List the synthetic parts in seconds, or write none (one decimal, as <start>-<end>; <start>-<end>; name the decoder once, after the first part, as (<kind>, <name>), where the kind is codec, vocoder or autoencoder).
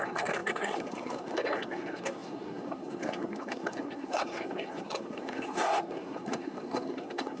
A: 0.0-7.4 (codec, SNAC)